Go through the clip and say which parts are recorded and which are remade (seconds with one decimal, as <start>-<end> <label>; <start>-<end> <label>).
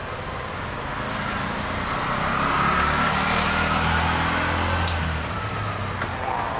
0.0-6.6 recorded